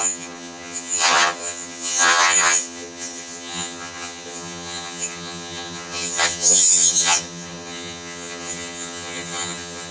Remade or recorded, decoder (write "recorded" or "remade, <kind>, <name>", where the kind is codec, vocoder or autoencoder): remade, vocoder, HiFi-GAN